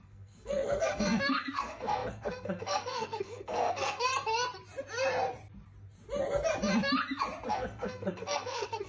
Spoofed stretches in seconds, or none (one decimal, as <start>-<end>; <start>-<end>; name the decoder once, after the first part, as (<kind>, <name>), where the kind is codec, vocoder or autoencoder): 0.0-4.1 (codec, SNAC); 7.5-8.9